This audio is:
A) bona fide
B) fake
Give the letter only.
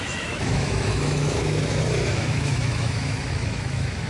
B